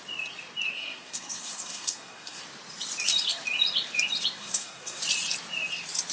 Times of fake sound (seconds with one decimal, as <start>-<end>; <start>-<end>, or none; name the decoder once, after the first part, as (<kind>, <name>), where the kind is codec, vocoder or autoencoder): 0.7-2.4 (codec, SNAC); 4.4-5.0